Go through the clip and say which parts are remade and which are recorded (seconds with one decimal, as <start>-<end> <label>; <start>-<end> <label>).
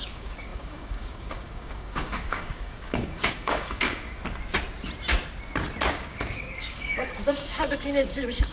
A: 0.0-4.2 remade; 4.2-5.9 recorded; 5.9-8.5 remade